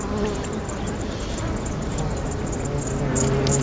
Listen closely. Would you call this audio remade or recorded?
recorded